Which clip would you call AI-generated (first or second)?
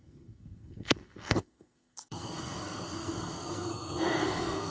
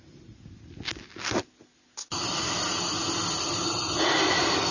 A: first